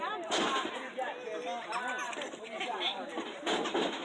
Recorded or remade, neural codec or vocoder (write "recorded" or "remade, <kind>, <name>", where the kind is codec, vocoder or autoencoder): recorded